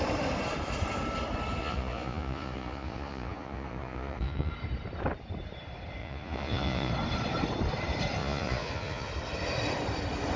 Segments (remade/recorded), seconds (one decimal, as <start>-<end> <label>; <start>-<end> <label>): 0.0-1.6 recorded; 1.6-4.5 remade; 4.5-6.0 recorded; 6.0-6.9 remade; 6.9-8.2 recorded; 8.2-9.1 remade; 9.1-10.4 recorded